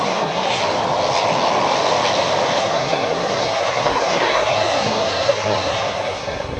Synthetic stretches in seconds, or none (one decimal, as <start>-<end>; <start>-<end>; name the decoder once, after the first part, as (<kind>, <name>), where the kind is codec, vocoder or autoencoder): 0.0-0.6 (codec, SNAC); 2.6-6.6